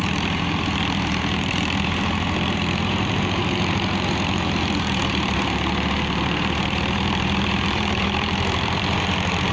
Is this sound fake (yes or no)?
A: yes